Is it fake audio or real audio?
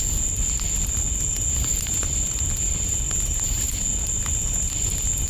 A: real